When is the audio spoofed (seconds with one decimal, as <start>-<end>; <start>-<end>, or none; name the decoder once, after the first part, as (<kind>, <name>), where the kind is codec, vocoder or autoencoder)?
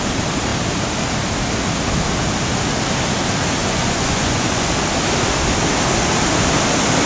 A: 3.6-4.7 (vocoder, Vocos)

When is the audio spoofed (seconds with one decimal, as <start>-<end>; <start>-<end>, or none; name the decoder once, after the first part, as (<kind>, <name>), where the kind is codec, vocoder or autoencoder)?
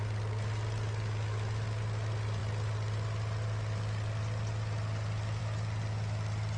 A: none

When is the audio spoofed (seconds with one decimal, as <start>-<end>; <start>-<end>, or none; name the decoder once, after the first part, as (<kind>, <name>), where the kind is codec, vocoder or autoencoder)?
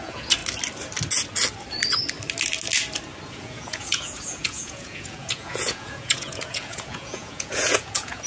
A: 0.0-0.4 (vocoder, Vocos); 3.3-8.3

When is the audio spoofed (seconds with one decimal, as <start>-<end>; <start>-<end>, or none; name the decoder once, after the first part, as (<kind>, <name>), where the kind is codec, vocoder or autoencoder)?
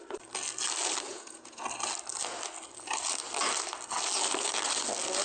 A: 1.1-1.6 (vocoder, Vocos)